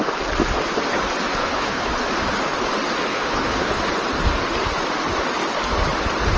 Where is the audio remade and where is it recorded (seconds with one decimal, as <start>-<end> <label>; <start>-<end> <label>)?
0.0-1.4 recorded; 1.4-1.9 remade; 1.9-3.1 recorded; 3.1-3.8 remade; 3.8-6.4 recorded